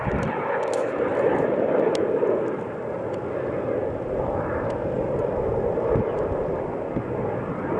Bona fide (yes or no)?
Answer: yes